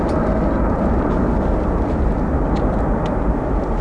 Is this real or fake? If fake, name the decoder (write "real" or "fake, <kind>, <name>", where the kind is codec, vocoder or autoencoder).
real